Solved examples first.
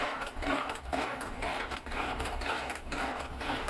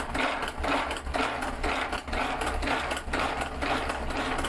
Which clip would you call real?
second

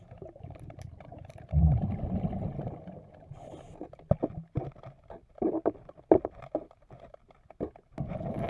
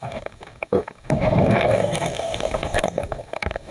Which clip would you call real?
first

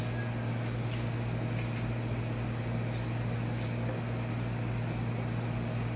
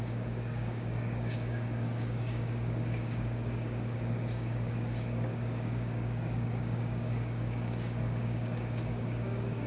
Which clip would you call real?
first